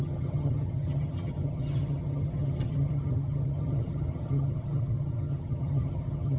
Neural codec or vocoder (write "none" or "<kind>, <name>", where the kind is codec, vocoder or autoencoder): vocoder, HiFi-GAN